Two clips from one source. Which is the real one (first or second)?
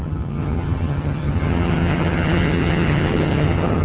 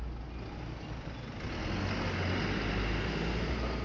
second